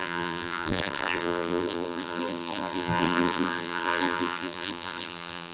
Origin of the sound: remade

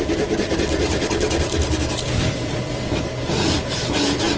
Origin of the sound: remade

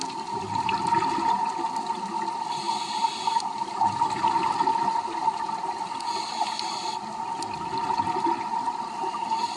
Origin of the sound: recorded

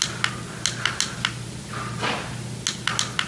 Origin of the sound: recorded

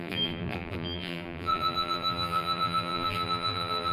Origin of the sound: remade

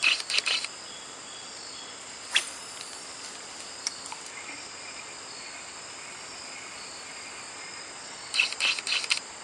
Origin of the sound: recorded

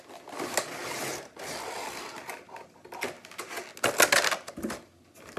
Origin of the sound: recorded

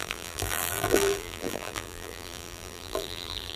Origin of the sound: remade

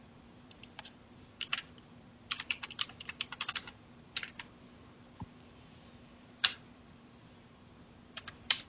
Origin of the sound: remade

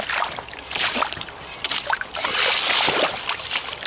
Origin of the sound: remade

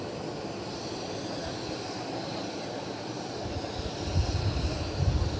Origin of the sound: recorded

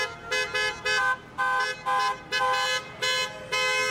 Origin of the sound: recorded